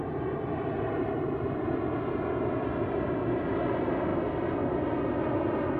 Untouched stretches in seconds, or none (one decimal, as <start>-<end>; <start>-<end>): 1.7-5.8